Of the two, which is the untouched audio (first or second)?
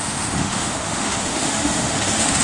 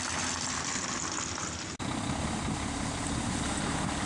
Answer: second